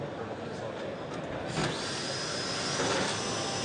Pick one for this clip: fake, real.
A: real